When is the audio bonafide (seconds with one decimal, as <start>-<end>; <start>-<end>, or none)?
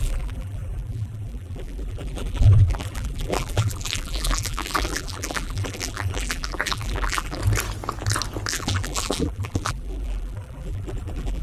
7.4-8.5